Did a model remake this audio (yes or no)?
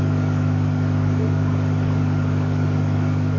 yes